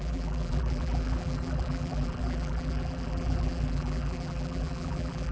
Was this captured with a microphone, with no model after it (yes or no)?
no